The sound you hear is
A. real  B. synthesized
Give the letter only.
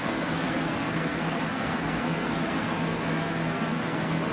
B